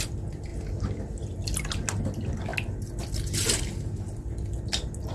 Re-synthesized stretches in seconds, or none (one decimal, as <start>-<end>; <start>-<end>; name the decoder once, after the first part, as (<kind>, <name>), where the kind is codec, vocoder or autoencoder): none